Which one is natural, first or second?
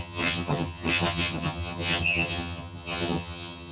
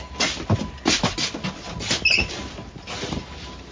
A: second